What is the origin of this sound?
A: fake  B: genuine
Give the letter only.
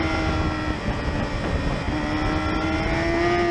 B